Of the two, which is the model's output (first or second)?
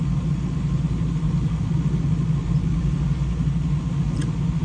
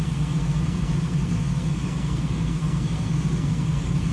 second